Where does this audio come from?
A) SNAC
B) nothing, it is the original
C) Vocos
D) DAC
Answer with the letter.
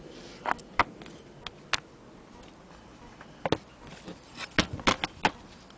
B